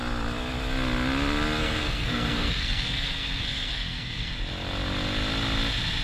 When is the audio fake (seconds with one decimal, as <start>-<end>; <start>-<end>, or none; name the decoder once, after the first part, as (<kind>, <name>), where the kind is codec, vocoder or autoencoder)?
1.6-4.3 (codec, SNAC)